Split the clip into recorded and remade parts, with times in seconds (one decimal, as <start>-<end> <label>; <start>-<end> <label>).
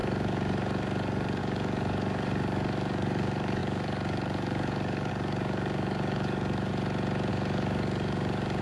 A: 0.0-6.7 remade; 6.7-7.3 recorded; 7.3-8.6 remade